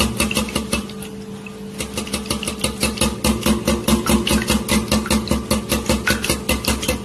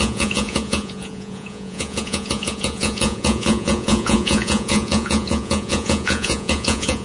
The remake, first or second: second